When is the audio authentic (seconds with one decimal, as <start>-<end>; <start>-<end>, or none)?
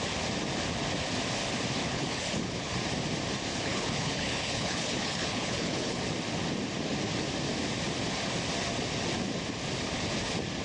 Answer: 0.0-1.8; 2.7-3.5; 6.0-10.6